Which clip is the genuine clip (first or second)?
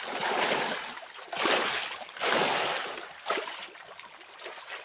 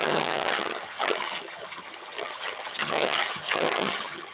first